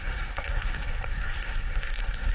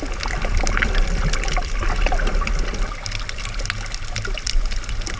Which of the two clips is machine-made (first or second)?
first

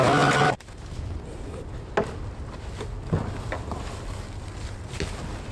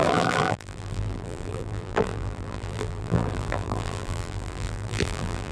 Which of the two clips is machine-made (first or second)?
second